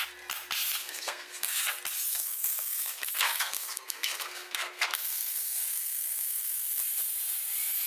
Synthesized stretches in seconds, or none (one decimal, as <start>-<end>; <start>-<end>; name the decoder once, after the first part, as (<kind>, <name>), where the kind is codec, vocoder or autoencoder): 0.8-1.6 (codec, SNAC); 2.1-6.8